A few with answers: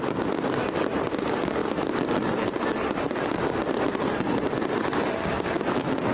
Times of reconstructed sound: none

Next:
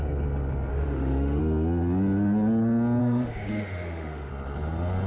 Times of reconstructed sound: 0.7-1.4 (autoencoder, DAC-VAE); 3.0-4.3